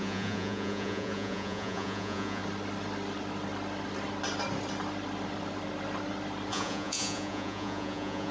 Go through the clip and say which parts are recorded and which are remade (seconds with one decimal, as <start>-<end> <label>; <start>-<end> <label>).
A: 0.0-2.4 remade; 2.4-6.5 recorded; 6.5-8.3 remade